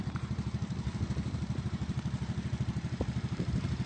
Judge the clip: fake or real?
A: fake